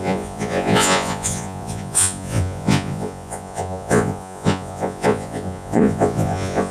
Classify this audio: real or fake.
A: fake